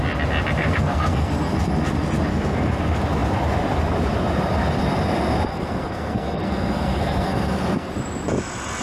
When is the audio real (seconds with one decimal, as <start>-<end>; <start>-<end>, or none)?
0.0-0.6; 1.3-2.3; 2.8-5.5; 7.9-8.8